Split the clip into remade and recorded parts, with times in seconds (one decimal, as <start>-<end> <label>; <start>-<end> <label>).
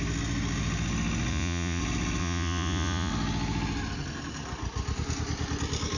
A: 0.0-1.3 recorded; 1.3-1.8 remade; 1.8-2.2 recorded; 2.2-3.1 remade; 3.1-6.0 recorded